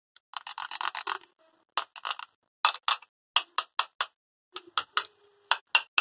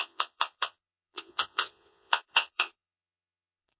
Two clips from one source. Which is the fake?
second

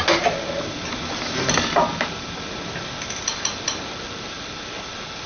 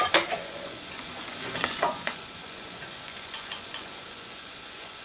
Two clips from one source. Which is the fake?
second